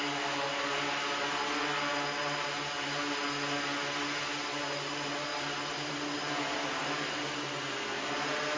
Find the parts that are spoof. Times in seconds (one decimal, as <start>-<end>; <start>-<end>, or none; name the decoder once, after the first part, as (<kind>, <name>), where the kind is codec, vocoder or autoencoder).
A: none

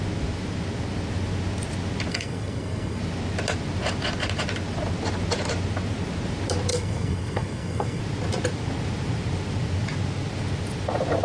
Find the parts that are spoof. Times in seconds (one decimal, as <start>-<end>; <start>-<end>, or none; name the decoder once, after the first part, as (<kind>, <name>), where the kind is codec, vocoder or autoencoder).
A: 2.1-3.0 (codec, SNAC); 6.7-8.0